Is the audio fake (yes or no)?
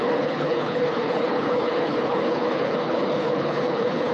yes